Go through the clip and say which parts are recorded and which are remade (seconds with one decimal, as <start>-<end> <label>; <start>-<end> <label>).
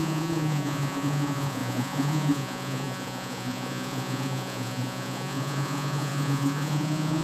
0.0-7.2 remade